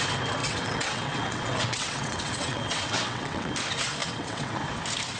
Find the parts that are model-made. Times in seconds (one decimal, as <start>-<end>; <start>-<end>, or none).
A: 0.4-3.5; 4.0-4.6